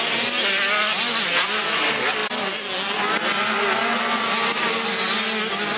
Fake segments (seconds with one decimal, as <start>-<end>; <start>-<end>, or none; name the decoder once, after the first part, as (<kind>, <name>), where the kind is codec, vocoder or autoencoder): none